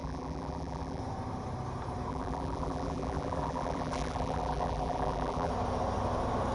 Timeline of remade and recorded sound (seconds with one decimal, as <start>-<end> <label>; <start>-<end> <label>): 0.0-1.0 remade; 1.0-2.1 recorded; 2.1-5.5 remade; 5.5-6.5 recorded